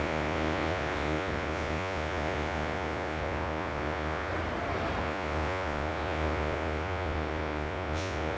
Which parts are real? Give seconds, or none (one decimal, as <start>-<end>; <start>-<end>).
4.3-5.0

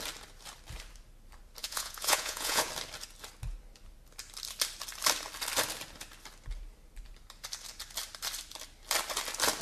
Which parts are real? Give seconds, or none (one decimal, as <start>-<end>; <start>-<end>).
0.0-1.6; 2.7-9.6

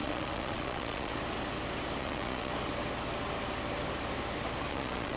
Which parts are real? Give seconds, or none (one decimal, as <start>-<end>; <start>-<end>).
1.1-2.0; 2.5-4.7

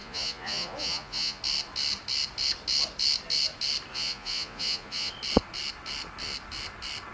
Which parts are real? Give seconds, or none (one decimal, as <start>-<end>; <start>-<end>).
1.4-3.9; 5.1-7.1